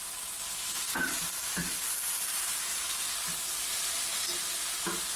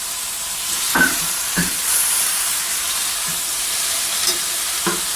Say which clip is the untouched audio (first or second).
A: first